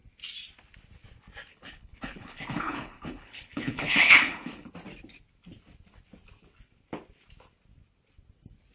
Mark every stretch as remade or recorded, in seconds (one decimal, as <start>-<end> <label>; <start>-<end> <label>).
0.0-1.5 recorded; 1.5-4.7 remade; 4.7-8.7 recorded